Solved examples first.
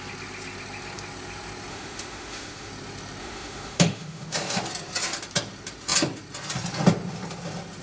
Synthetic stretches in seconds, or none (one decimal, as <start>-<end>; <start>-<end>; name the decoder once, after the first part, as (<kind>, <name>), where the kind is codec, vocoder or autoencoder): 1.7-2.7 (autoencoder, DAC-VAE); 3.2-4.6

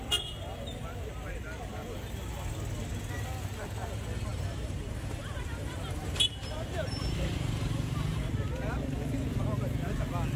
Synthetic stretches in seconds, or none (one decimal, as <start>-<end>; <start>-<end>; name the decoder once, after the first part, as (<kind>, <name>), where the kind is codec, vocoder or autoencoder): 4.3-8.3 (vocoder, BigVGAN v2)

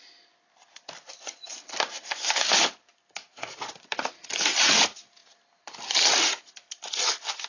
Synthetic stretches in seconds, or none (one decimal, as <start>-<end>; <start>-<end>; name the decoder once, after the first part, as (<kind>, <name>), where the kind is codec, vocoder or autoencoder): 0.0-7.5 (vocoder, BigVGAN v2)

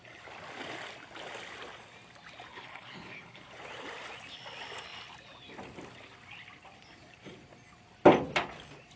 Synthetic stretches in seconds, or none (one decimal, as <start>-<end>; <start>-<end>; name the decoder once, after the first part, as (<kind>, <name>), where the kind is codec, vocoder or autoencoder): 2.5-3.5 (codec, HILCodec)

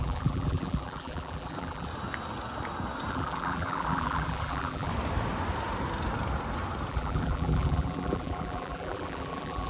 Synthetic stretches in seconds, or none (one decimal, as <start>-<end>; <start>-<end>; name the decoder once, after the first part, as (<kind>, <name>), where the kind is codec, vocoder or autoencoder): 0.0-1.9 (vocoder, BigVGAN v2); 3.1-4.9; 6.9-9.7

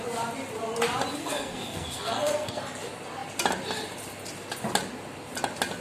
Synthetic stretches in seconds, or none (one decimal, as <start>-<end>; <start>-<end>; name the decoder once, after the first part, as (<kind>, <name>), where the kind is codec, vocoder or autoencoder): 1.2-2.6 (codec, SNAC)

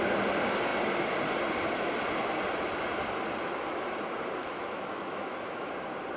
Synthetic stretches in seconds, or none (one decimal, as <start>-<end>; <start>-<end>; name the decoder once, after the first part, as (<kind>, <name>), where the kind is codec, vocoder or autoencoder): 4.4-5.7 (autoencoder, DAC-VAE)